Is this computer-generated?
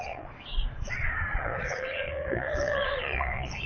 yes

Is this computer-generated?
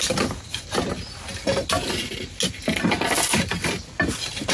no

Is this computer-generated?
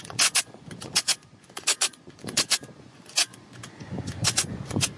yes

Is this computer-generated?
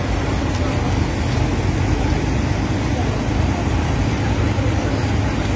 no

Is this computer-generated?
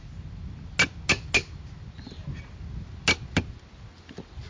no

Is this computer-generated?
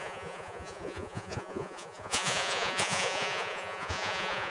yes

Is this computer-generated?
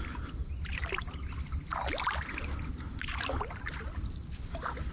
no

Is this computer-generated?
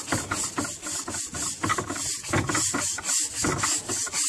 no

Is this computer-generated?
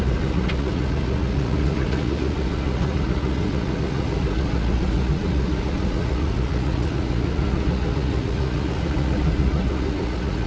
yes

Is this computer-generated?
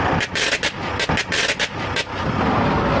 no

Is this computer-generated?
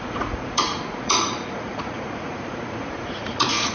yes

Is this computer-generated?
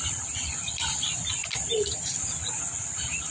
no